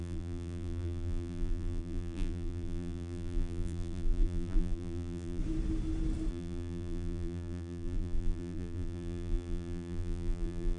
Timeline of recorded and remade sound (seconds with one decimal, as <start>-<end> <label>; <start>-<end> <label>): 0.0-5.4 remade; 5.4-6.3 recorded; 6.3-10.8 remade